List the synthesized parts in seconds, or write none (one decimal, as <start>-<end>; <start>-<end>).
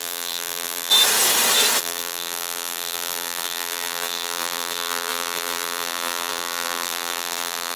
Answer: 0.0-0.9; 1.8-7.8